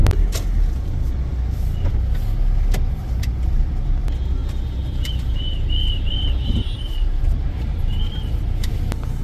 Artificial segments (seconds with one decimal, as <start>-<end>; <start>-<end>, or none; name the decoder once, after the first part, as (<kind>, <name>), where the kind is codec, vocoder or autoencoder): 4.4-8.7 (vocoder, BigVGAN v2)